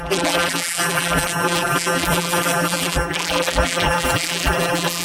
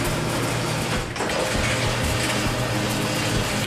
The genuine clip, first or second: second